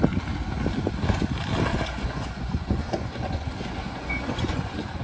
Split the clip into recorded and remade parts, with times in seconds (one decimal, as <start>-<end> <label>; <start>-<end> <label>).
0.0-1.7 recorded; 1.7-5.0 remade